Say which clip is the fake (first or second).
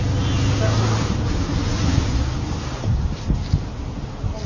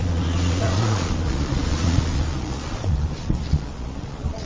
second